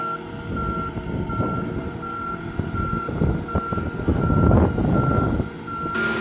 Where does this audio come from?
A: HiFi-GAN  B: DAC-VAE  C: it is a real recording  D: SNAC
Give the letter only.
C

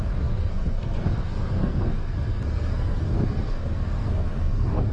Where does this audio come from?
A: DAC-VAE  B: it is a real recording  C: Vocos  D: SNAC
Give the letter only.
D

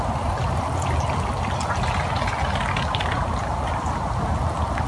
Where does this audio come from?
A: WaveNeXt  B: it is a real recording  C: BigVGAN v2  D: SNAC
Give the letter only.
B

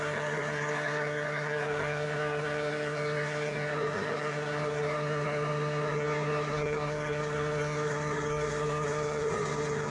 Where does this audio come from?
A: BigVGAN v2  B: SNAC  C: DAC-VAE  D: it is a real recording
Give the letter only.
B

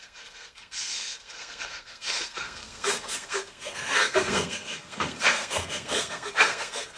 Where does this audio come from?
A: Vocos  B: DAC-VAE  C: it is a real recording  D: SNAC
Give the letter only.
D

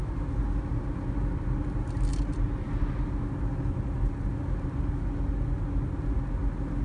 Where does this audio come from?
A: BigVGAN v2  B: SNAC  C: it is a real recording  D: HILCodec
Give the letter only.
C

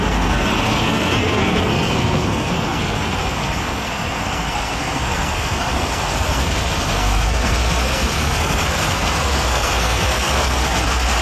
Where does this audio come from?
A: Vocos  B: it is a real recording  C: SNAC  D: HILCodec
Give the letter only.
C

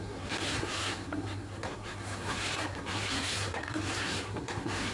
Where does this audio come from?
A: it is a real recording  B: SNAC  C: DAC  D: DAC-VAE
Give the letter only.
B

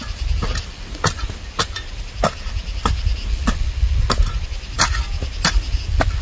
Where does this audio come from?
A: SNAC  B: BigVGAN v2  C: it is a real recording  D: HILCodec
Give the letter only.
C